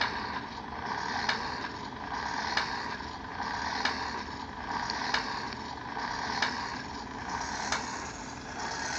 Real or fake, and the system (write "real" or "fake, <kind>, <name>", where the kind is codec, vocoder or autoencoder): real